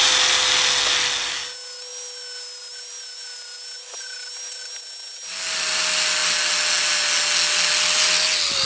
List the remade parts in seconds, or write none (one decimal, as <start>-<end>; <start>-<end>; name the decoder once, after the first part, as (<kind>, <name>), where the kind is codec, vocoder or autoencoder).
none